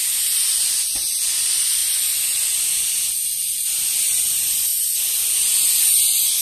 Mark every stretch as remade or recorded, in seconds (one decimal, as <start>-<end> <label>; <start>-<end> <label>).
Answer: 0.0-1.3 remade; 1.3-6.4 recorded